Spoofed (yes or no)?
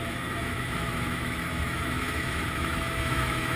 yes